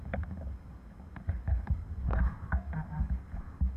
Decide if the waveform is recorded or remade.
remade